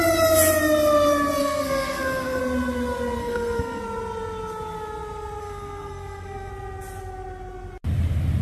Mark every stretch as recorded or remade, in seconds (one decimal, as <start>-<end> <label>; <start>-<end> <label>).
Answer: 0.0-1.4 recorded; 1.4-2.4 remade; 2.4-3.2 recorded; 3.2-3.8 remade; 3.8-5.4 recorded; 5.4-6.5 remade; 6.5-8.4 recorded